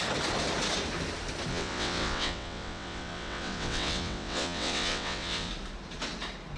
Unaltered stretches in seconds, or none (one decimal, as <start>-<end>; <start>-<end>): 0.0-1.5; 5.5-6.6